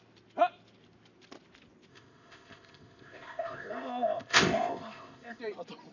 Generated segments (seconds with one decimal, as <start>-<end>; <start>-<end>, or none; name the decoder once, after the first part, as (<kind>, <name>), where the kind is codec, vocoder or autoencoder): 1.9-5.4 (codec, ZipCodec)

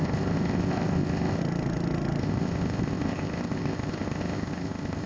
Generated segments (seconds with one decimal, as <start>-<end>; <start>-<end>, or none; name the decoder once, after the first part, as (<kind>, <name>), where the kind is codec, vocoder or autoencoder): 0.0-1.4 (codec, ZipCodec); 2.2-5.1

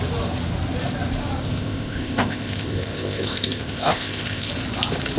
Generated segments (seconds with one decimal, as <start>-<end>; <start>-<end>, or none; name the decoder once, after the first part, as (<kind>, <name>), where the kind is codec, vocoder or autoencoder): 1.4-4.5 (codec, ZipCodec)

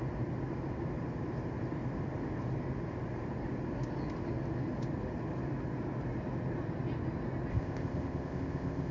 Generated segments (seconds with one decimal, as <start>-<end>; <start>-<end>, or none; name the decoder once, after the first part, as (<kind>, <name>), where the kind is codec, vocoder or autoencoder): 7.5-8.9 (codec, ZipCodec)

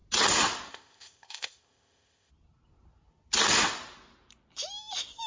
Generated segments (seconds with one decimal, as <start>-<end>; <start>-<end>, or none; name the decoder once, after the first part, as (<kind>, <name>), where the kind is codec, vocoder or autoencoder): 0.7-2.3 (codec, ZipCodec)